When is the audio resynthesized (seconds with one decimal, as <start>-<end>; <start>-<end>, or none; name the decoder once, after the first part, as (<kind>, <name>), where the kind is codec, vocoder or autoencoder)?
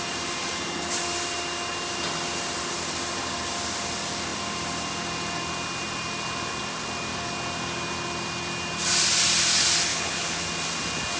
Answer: 9.9-10.4 (codec, HILCodec)